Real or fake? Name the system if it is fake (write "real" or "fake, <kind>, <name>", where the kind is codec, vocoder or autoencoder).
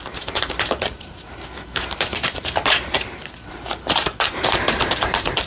fake, vocoder, BigVGAN v2